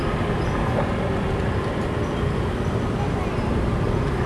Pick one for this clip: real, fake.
real